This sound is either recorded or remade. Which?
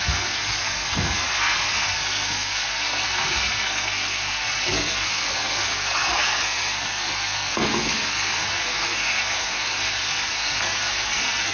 remade